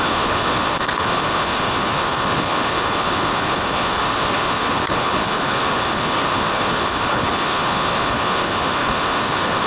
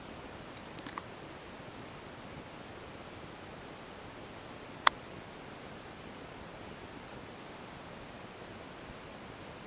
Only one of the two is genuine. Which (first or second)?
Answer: second